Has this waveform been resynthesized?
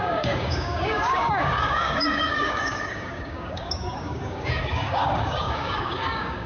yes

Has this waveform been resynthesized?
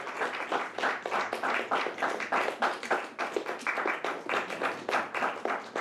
no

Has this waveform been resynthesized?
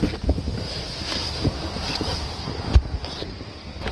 no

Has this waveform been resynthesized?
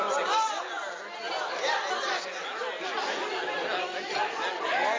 no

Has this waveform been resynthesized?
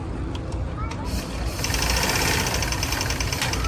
no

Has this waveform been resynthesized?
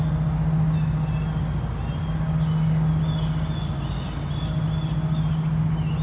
no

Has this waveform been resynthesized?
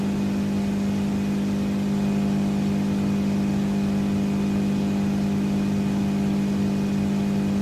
no